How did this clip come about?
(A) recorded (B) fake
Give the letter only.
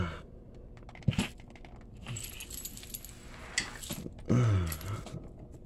A